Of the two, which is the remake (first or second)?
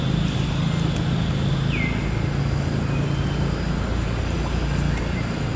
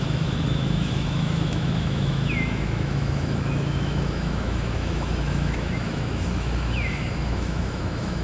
second